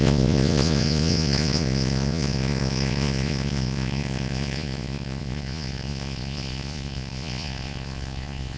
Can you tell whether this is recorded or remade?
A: remade